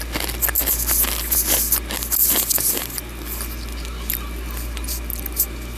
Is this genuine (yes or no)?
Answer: yes